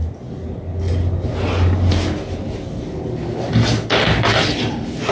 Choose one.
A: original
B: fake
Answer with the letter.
A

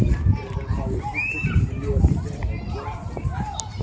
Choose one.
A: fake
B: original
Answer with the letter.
B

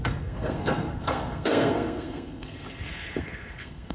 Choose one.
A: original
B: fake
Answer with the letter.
B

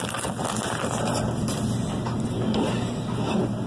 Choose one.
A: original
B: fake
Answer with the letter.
A